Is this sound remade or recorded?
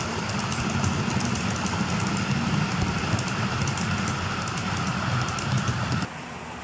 recorded